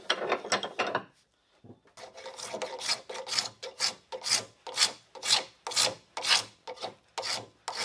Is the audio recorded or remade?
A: recorded